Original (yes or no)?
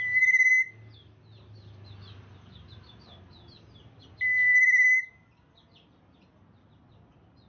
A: yes